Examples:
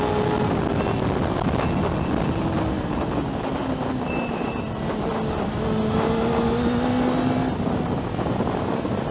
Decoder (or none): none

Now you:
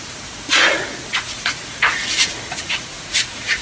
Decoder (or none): vocoder, Vocos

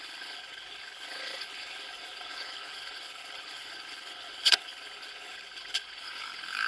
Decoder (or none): codec, HILCodec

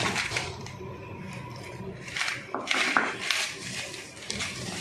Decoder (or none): vocoder, BigVGAN v2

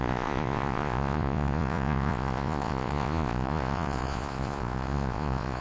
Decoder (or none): vocoder, Vocos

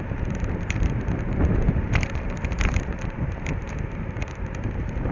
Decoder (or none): vocoder, BigVGAN v2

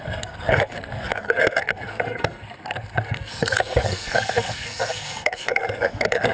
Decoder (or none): codec, SNAC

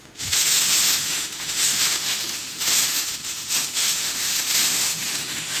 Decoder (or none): autoencoder, DAC-VAE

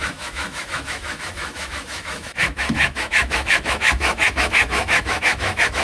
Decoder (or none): autoencoder, DAC-VAE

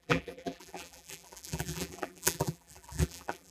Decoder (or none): vocoder, BigVGAN v2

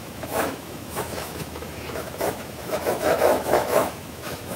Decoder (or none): autoencoder, DAC-VAE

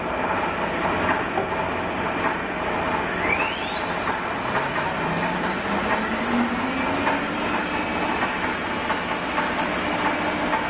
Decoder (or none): none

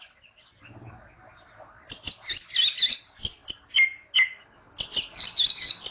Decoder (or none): none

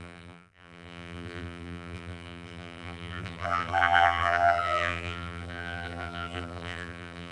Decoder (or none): vocoder, BigVGAN v2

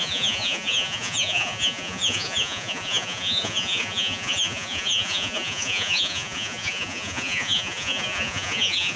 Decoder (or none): vocoder, Vocos